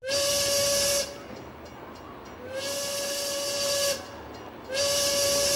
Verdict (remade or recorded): recorded